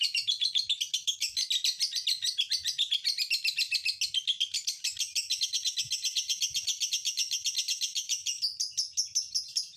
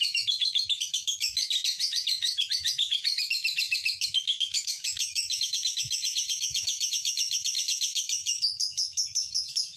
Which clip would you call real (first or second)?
first